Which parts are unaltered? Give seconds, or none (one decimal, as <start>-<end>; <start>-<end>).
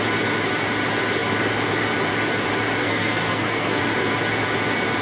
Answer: 0.0-2.8; 3.8-5.0